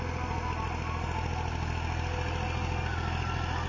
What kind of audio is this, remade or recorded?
recorded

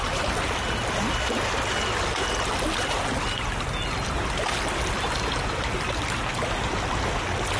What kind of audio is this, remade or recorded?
recorded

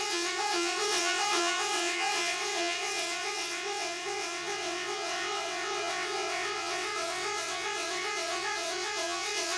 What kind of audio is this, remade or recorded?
remade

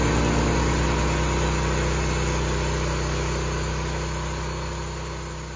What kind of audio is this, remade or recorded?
recorded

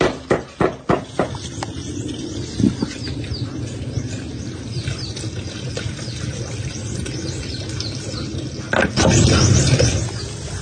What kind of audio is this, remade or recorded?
recorded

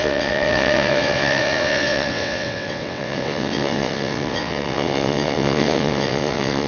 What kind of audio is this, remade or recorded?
remade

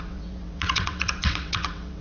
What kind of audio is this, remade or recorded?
remade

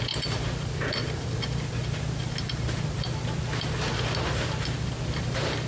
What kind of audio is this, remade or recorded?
recorded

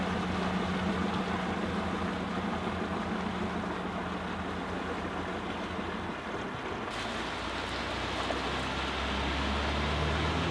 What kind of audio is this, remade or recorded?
recorded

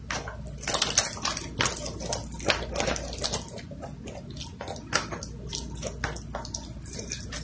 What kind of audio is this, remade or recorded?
recorded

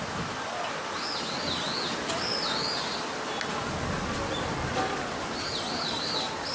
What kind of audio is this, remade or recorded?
recorded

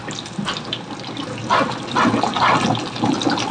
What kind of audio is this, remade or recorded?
recorded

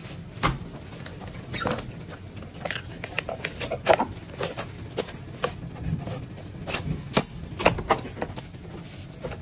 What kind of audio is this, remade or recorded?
recorded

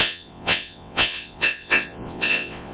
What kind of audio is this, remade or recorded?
remade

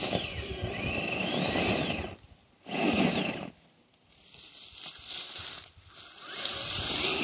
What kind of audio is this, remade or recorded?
recorded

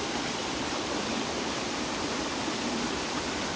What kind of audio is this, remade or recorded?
recorded